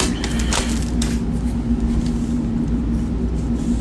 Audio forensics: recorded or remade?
recorded